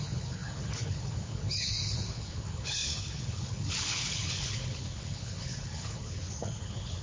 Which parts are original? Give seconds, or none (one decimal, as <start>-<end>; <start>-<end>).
none